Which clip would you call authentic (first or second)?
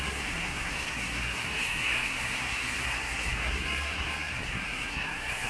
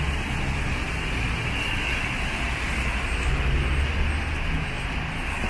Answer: second